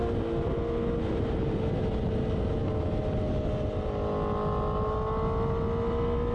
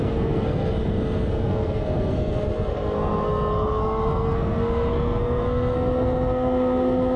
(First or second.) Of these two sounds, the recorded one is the first